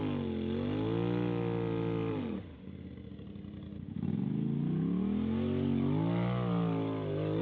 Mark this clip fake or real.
real